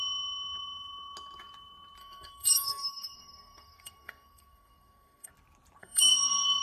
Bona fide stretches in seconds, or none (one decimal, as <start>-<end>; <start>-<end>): 0.0-2.0; 5.3-5.8